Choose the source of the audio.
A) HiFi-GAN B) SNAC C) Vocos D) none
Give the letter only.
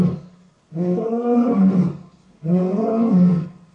B